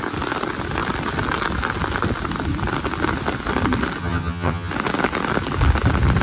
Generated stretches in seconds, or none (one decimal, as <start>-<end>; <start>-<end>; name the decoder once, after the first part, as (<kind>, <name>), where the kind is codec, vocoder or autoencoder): 4.0-4.7 (vocoder, HiFi-GAN)